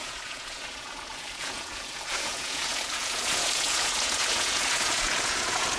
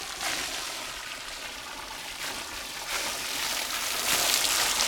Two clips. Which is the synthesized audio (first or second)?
first